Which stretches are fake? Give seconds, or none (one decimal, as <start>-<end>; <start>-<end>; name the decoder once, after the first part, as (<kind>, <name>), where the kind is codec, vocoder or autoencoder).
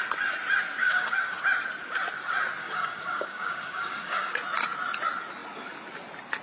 0.8-1.4 (codec, DAC); 2.6-4.3